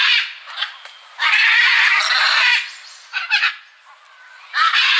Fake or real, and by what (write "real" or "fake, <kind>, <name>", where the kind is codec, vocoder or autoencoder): real